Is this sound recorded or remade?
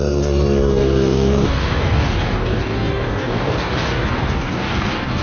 remade